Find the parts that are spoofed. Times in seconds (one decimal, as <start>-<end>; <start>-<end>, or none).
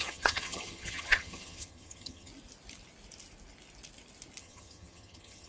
0.0-2.3; 4.4-5.5